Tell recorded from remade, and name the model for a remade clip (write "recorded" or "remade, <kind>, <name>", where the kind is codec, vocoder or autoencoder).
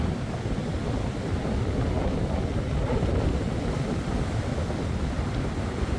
recorded